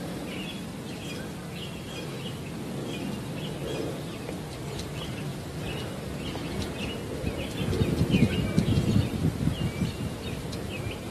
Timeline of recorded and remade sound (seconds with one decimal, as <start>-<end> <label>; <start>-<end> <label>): 0.0-11.1 recorded